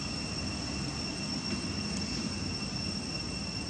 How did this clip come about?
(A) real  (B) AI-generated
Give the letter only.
A